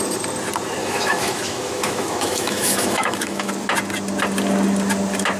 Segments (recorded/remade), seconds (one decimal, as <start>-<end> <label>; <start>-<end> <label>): 0.0-0.8 recorded; 0.8-3.5 remade; 3.5-5.4 recorded